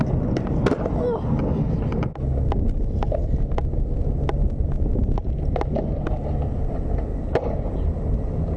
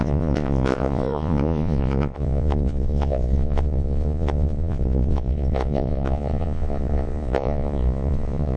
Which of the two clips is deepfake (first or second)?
second